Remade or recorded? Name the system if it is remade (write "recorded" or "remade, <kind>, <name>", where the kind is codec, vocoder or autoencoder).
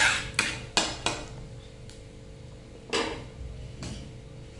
recorded